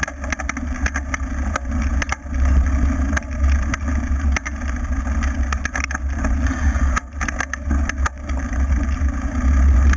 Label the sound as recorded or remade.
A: recorded